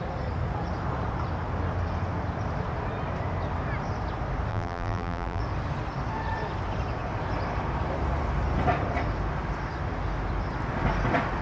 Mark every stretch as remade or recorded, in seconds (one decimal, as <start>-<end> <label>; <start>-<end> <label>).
0.0-4.5 recorded; 4.5-5.4 remade; 5.4-11.4 recorded